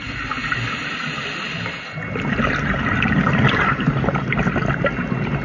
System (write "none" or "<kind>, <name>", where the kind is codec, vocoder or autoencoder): none